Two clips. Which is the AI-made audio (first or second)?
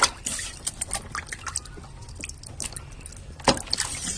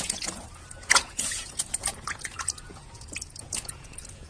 second